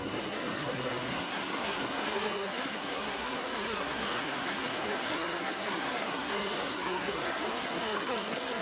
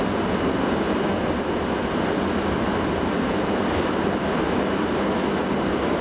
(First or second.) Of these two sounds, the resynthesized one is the first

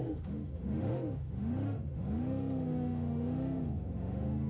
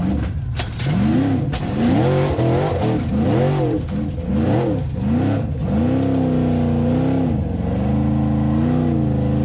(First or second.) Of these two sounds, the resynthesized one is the first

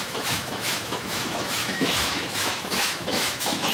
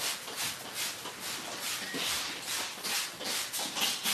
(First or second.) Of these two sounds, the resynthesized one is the first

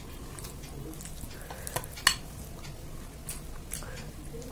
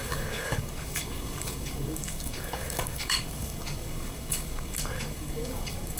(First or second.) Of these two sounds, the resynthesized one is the second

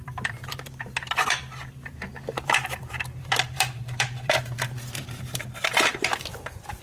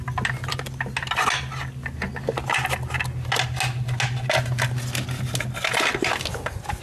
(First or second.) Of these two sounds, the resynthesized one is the first